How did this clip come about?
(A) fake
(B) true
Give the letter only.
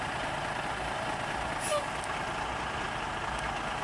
B